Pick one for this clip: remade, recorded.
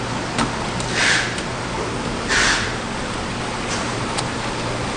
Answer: recorded